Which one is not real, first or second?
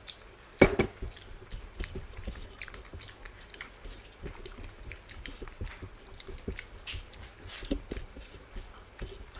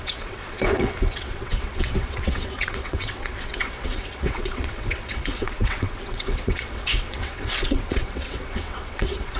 second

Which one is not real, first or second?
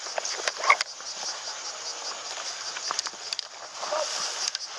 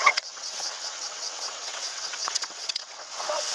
second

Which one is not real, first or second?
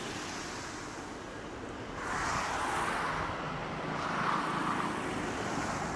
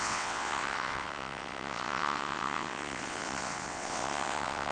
second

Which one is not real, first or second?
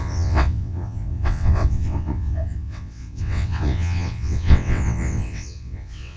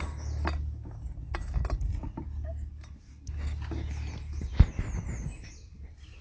first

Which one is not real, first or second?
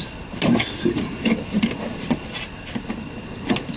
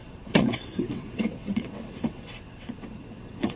second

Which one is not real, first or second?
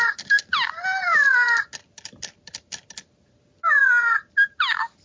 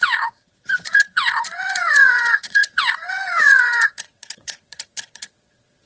second